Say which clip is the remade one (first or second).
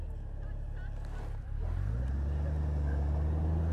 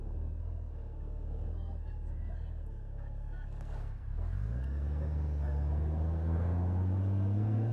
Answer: second